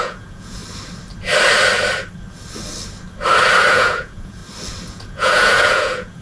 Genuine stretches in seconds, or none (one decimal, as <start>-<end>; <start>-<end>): 0.6-3.7; 4.4-4.9